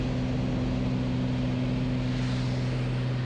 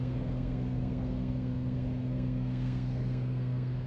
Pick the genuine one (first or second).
first